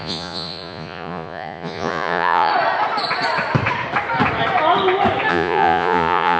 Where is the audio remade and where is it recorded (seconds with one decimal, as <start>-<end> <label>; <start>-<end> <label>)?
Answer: 0.0-2.5 remade; 2.5-5.3 recorded; 5.3-6.4 remade